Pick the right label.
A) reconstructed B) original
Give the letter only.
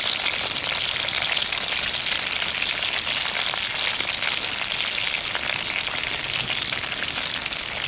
B